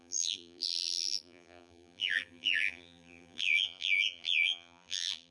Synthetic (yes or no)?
yes